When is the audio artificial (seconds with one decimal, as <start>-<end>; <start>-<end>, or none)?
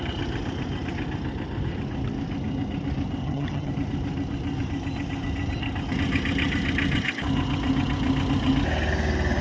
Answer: 3.2-3.7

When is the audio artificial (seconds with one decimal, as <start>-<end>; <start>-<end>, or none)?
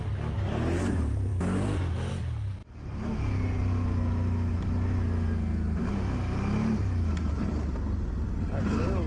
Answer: none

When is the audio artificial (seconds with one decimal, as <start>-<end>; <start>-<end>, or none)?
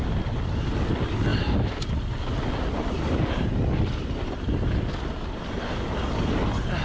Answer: none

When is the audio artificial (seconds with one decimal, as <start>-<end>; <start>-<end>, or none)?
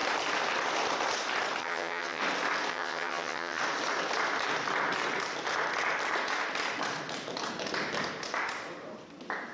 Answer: 1.6-2.2; 2.7-3.6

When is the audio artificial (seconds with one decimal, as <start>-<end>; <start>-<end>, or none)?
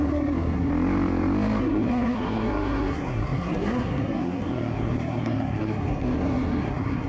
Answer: 0.0-0.7; 1.6-7.1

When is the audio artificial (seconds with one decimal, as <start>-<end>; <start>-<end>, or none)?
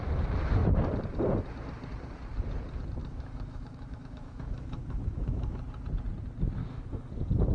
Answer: 3.0-5.6; 6.6-7.1